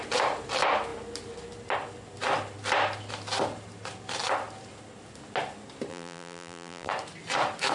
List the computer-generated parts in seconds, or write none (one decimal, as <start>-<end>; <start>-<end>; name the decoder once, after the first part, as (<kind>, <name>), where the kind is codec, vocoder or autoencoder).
5.9-6.9 (vocoder, BigVGAN v2)